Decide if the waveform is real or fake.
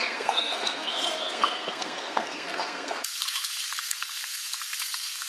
fake